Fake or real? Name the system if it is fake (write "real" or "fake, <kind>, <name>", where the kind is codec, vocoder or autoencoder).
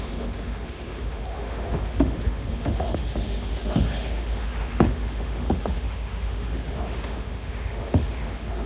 fake, autoencoder, DAC-VAE